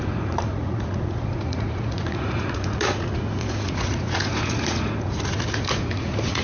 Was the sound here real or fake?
fake